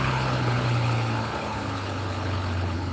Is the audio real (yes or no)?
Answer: no